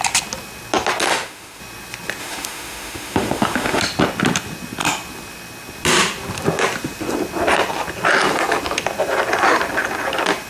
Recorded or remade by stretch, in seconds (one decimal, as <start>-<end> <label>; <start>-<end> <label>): 0.0-1.1 recorded; 1.1-1.6 remade; 1.6-2.2 recorded; 2.2-3.8 remade; 3.8-10.5 recorded